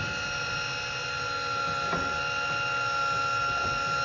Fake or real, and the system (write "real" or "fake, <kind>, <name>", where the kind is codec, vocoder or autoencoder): real